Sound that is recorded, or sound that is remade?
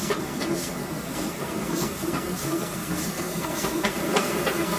remade